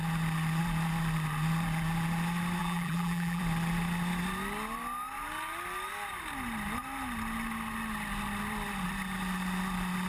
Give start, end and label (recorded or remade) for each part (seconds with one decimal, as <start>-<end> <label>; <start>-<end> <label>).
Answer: 0.0-2.6 recorded; 2.6-3.4 remade; 3.4-10.1 recorded